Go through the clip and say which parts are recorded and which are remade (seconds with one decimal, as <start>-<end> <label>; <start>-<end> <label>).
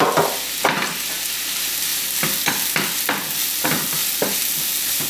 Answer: 0.0-5.1 recorded